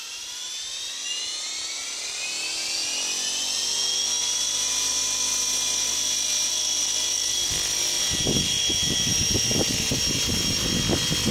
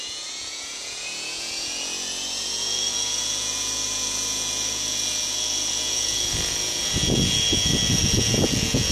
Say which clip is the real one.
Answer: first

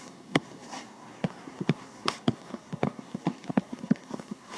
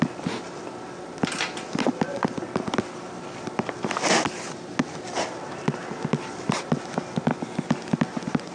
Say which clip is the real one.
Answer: second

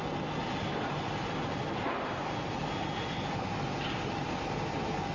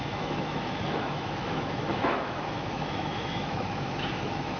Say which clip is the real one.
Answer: first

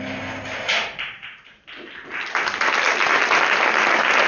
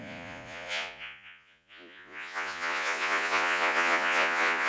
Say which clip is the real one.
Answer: first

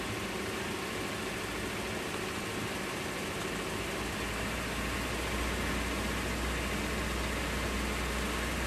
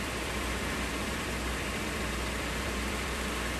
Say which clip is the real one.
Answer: first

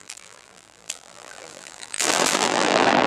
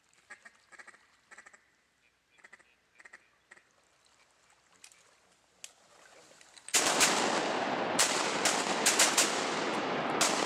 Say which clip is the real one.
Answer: second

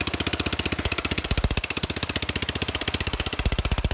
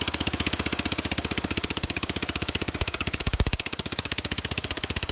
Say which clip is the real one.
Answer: first